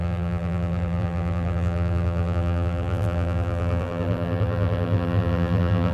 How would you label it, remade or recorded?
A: remade